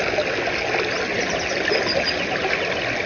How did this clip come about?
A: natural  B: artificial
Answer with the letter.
A